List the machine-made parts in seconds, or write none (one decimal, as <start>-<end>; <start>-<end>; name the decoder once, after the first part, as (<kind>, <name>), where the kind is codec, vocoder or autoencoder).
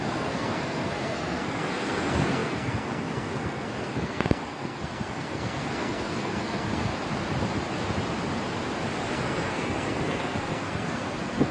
0.0-6.9 (codec, SNAC); 9.1-11.5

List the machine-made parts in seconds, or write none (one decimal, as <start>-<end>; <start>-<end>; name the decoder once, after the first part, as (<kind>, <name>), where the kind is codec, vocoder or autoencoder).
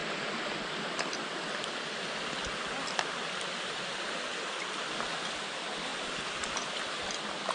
0.0-1.7 (vocoder, BigVGAN v2); 4.3-4.8; 5.9-7.1